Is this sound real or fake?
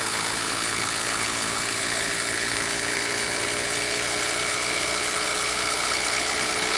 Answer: fake